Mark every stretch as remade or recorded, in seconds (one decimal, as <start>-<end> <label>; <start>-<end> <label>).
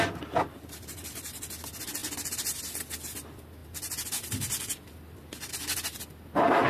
0.0-6.7 recorded